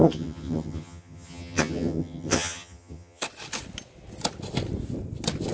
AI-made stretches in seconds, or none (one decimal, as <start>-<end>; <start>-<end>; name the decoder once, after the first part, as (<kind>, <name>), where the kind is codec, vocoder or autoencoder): 0.0-3.2 (vocoder, HiFi-GAN)